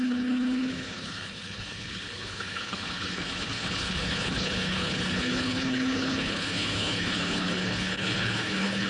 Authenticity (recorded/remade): remade